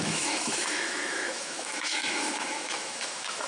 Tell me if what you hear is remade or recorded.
remade